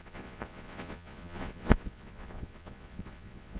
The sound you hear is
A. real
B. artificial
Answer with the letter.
B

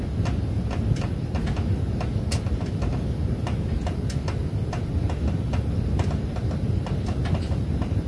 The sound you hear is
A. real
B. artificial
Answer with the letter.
A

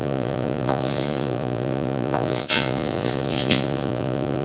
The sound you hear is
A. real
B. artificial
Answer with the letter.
B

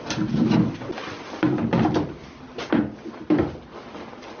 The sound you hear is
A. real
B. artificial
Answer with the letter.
A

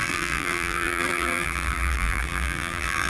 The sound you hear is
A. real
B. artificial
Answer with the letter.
B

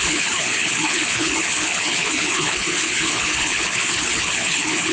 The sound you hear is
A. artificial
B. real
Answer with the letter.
A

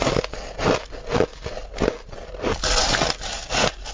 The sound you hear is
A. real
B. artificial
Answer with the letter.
A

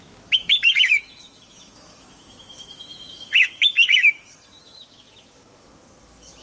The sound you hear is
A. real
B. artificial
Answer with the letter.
B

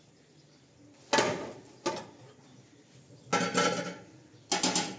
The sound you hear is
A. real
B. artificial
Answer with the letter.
A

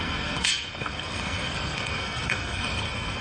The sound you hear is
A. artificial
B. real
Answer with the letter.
A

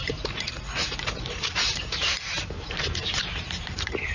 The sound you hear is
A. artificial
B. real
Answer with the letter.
A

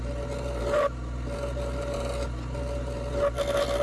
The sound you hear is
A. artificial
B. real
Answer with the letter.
B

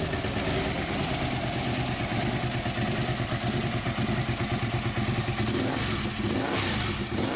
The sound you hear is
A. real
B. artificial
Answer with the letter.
A